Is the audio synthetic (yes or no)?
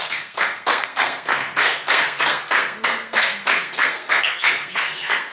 yes